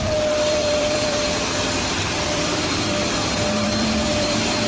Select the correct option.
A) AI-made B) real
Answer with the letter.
A